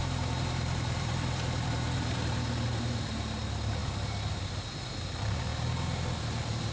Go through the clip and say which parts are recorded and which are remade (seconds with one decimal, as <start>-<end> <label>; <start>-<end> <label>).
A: 0.0-3.8 remade; 3.8-4.4 recorded; 4.4-5.5 remade; 5.5-6.2 recorded; 6.2-6.7 remade

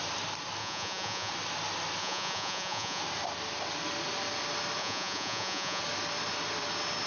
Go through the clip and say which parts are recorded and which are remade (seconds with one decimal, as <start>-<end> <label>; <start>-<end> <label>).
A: 0.0-0.6 recorded; 0.6-1.3 remade; 1.3-2.0 recorded; 2.0-3.0 remade; 3.0-4.8 recorded; 4.8-5.8 remade; 5.8-7.1 recorded